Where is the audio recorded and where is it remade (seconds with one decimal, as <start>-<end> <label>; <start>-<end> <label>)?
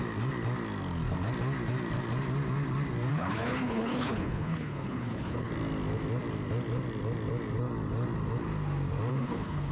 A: 0.0-3.1 recorded; 3.1-5.5 remade; 5.5-9.1 recorded; 9.1-9.7 remade